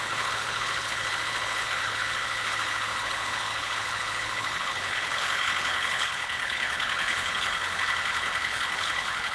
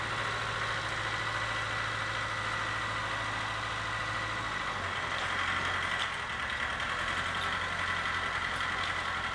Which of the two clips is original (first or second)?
second